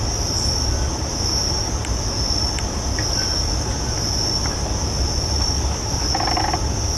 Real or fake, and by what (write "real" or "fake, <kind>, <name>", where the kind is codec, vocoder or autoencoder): real